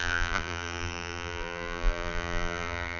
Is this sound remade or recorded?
remade